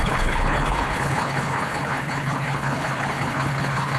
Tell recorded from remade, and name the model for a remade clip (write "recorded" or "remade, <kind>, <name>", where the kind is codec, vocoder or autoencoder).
remade, codec, HILCodec